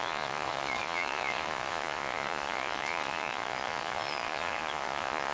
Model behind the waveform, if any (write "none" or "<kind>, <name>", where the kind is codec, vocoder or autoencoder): vocoder, Vocos